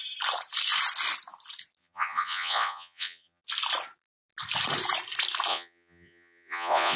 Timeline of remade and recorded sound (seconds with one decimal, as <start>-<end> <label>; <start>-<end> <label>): 0.0-1.8 recorded; 1.8-3.4 remade; 3.4-5.5 recorded; 5.5-7.0 remade